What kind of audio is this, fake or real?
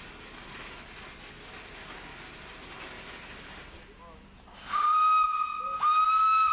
real